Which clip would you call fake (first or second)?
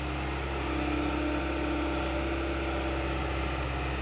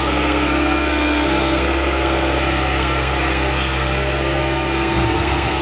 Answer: second